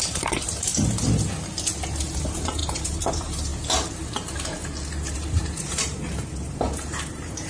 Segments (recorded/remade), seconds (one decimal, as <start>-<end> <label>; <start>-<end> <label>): 0.0-0.7 remade; 0.7-2.2 recorded; 2.2-3.5 remade; 3.5-5.1 recorded; 5.1-7.5 remade

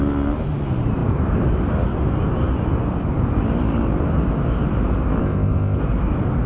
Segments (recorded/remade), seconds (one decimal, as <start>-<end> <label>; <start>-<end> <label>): 0.0-5.2 recorded; 5.2-5.8 remade; 5.8-6.5 recorded

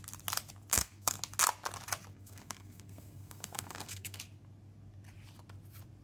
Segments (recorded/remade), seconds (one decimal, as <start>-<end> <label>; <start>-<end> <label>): 0.0-0.7 recorded; 0.7-1.2 remade; 1.2-2.1 recorded; 2.1-4.2 remade; 4.2-6.0 recorded

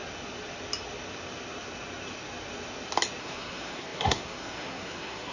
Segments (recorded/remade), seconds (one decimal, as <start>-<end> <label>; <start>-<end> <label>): 0.0-3.2 recorded; 3.2-5.3 remade

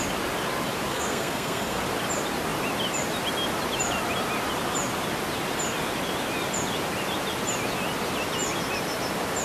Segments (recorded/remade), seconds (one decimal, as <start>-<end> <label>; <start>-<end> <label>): 0.0-0.9 recorded; 0.9-1.8 remade; 1.8-9.4 recorded

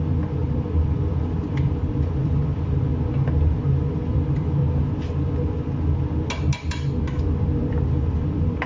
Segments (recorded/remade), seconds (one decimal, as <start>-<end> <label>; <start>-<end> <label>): 0.0-2.9 remade; 2.9-3.7 recorded; 3.7-4.6 remade; 4.6-6.7 recorded; 6.7-8.7 remade